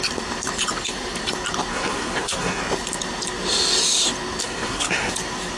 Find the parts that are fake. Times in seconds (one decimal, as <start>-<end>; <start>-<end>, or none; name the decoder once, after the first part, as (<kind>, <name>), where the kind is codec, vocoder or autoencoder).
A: 1.7-2.6 (codec, SNAC); 4.4-5.1